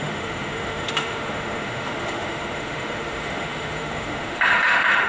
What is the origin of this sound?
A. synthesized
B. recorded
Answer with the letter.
A